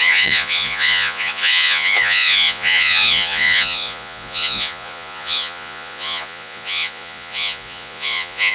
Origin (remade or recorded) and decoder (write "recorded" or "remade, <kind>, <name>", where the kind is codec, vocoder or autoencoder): remade, vocoder, Vocos